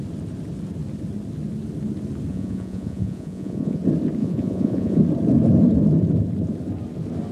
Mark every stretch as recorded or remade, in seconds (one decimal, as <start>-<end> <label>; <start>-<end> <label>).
0.0-2.3 recorded; 2.3-3.8 remade; 3.8-4.2 recorded; 4.2-5.0 remade; 5.0-7.3 recorded